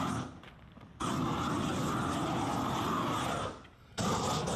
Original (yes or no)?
yes